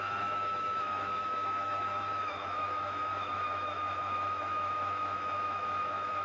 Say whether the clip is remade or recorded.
remade